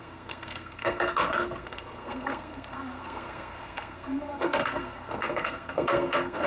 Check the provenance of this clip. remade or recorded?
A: remade